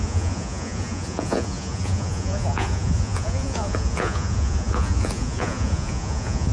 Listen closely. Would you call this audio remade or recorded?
remade